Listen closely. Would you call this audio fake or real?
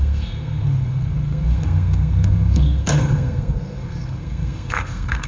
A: fake